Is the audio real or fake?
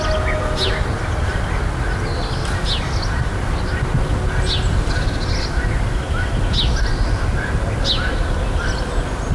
real